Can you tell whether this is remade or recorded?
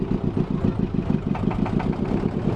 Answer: recorded